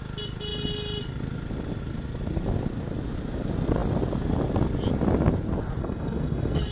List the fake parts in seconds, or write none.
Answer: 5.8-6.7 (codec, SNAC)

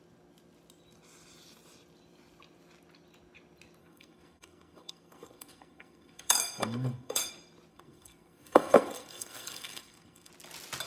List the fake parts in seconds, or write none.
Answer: 3.8-7.3 (codec, SNAC); 7.7-10.3

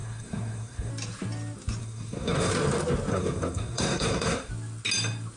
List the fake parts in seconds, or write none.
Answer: 0.0-0.9 (codec, SNAC); 1.8-2.5; 3.1-4.5